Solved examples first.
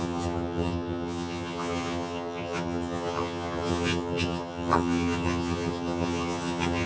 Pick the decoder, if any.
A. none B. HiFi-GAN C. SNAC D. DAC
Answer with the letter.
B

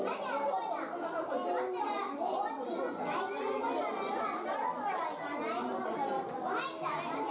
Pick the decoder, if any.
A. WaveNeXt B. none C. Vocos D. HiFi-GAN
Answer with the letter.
B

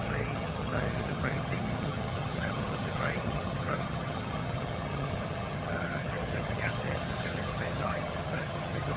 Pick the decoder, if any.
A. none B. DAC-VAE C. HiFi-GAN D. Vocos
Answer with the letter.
C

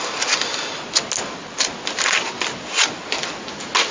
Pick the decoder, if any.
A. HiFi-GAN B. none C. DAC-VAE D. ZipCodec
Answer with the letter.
B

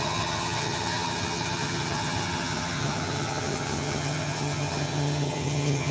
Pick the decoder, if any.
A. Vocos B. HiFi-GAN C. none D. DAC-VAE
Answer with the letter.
B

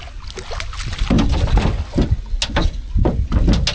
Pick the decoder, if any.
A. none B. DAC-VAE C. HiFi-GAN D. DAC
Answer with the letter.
A